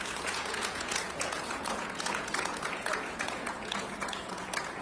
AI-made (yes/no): yes